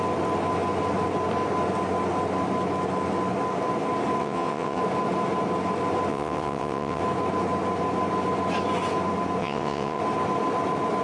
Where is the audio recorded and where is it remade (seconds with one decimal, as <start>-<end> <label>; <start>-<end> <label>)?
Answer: 0.0-4.2 recorded; 4.2-4.8 remade; 4.8-6.1 recorded; 6.1-7.0 remade; 7.0-9.4 recorded; 9.4-10.0 remade; 10.0-11.0 recorded